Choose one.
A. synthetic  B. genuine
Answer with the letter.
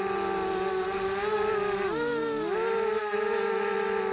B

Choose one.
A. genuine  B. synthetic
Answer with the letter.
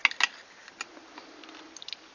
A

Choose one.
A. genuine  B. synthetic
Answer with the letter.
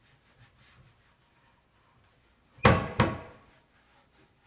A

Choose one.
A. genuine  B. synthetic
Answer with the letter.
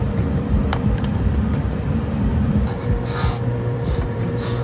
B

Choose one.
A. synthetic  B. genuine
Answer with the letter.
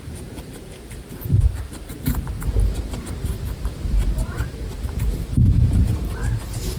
A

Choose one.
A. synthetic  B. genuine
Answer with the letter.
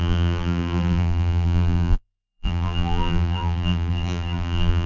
A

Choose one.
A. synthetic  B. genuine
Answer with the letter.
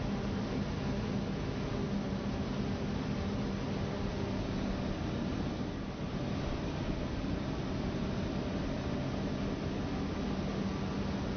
B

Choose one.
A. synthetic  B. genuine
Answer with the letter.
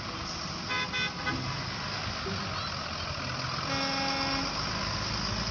B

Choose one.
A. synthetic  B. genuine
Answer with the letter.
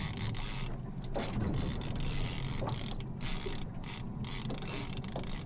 B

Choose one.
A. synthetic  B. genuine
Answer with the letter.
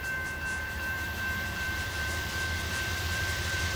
A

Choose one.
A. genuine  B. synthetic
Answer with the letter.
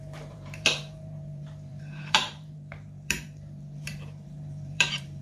B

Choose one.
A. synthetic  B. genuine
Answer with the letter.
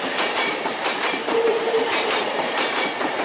A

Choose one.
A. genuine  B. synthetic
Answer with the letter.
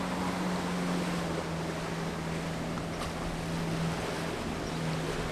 A